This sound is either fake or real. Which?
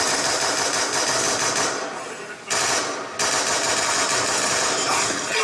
real